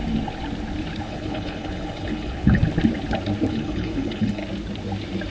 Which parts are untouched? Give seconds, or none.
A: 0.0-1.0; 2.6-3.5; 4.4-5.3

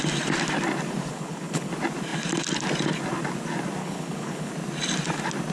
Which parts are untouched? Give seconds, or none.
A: 0.0-1.1; 1.7-3.8; 4.5-5.5

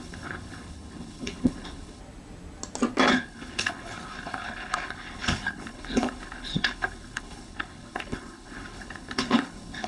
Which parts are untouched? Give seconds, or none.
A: 2.0-3.1

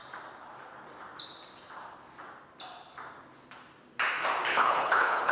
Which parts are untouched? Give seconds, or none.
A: 0.0-4.5